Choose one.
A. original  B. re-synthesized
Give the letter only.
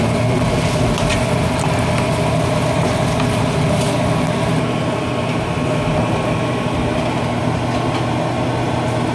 A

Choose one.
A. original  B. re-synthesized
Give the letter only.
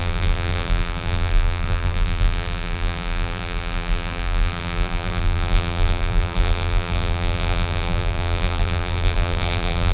B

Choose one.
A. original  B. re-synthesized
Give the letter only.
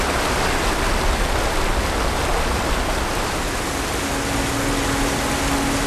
A